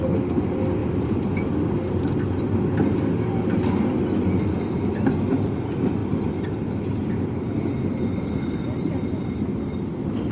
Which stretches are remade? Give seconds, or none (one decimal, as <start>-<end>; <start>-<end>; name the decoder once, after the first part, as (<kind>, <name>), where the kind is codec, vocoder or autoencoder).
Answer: 0.8-1.3 (vocoder, BigVGAN v2)